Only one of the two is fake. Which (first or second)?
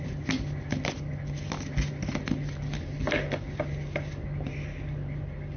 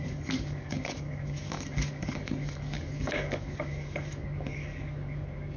second